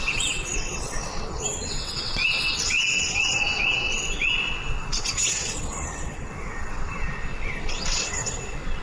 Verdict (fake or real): fake